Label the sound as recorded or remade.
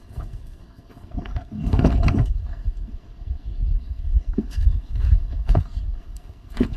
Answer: remade